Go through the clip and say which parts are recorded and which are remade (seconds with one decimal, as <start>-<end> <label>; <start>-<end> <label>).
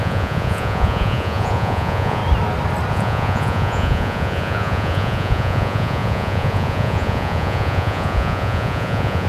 0.0-2.2 remade; 2.2-2.9 recorded; 2.9-9.3 remade